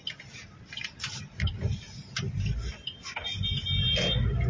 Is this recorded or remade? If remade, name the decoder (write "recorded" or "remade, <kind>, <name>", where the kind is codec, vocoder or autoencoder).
recorded